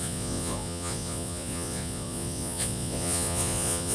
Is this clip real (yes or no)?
no